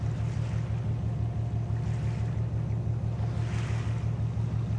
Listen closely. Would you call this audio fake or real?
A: real